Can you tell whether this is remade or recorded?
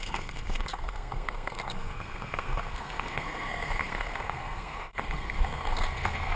remade